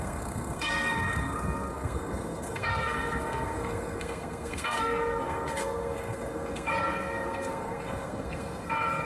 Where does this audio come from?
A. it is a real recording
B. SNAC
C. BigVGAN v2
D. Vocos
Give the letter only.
B